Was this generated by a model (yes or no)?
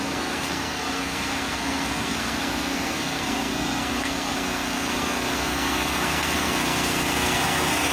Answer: yes